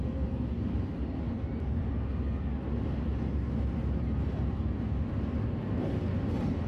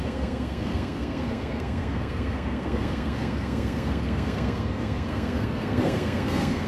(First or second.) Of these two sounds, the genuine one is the first